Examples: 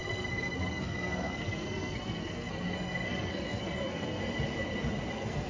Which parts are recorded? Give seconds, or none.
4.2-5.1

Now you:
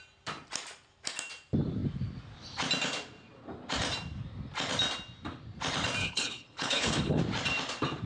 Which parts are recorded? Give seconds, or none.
0.0-6.0; 7.2-8.1

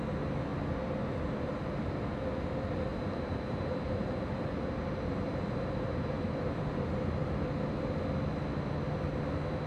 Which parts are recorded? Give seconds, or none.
0.0-0.5; 1.1-2.9; 7.3-9.7

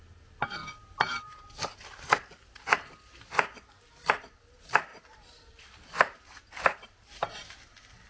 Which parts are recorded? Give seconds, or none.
0.0-4.9

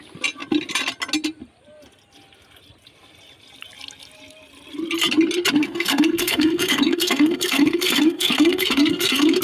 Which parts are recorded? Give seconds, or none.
0.0-5.6

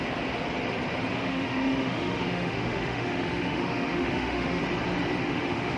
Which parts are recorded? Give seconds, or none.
0.0-1.1; 4.6-5.2

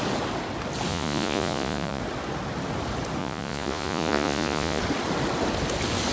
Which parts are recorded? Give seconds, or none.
0.0-0.9; 2.0-3.2; 4.8-6.1

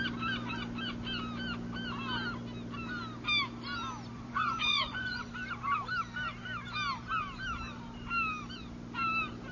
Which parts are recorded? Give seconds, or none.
0.0-4.1; 5.3-9.5